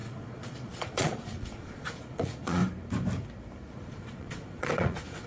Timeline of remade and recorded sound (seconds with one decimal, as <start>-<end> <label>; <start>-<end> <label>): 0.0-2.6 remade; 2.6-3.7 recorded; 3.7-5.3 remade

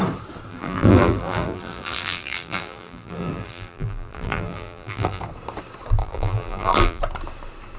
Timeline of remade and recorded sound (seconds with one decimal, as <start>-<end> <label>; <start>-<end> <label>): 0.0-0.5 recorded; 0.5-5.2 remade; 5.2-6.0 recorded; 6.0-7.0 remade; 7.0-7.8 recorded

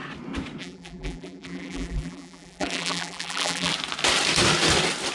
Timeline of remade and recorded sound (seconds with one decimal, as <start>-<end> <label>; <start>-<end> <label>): 0.0-0.6 recorded; 0.6-3.7 remade; 3.7-5.1 recorded

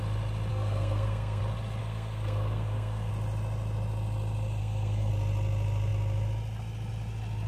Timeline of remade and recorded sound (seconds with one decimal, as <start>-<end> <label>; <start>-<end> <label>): 0.0-0.5 recorded; 0.5-1.4 remade; 1.4-1.8 recorded; 1.8-3.1 remade; 3.1-4.6 recorded; 4.6-5.1 remade; 5.1-7.5 recorded

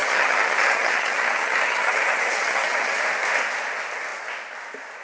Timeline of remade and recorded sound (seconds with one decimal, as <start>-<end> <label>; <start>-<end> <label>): 0.0-3.0 remade; 3.0-5.0 recorded